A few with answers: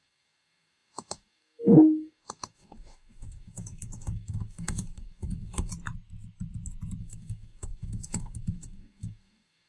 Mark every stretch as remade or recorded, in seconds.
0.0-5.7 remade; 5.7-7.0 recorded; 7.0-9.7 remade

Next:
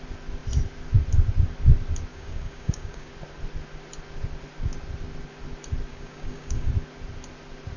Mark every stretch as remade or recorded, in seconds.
0.0-2.1 recorded; 2.1-3.1 remade; 3.1-5.9 recorded; 5.9-6.7 remade; 6.7-7.8 recorded

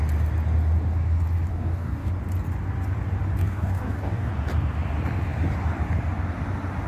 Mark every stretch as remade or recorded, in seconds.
0.0-1.5 recorded; 1.5-2.1 remade; 2.1-3.4 recorded; 3.4-4.3 remade; 4.3-6.9 recorded

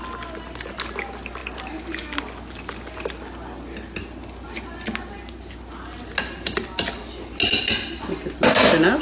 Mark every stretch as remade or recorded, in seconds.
0.0-9.0 recorded

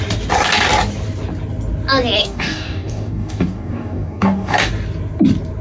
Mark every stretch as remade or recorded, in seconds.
0.0-2.2 recorded; 2.2-4.7 remade; 4.7-5.6 recorded

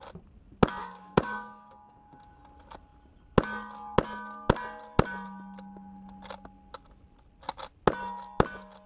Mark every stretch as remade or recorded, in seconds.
0.0-0.8 recorded; 0.8-2.4 remade; 2.4-8.9 recorded

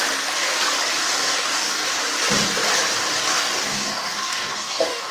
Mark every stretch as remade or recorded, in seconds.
0.0-1.0 recorded; 1.0-2.0 remade; 2.0-3.3 recorded; 3.3-5.1 remade